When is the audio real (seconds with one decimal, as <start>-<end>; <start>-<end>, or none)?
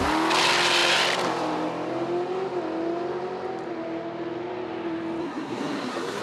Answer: 0.0-5.2